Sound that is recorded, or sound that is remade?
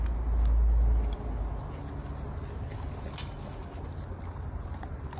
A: recorded